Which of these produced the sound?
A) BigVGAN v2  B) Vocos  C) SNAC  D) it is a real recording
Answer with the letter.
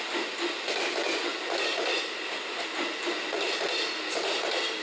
D